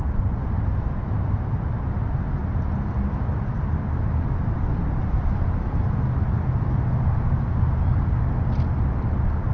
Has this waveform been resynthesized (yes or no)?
no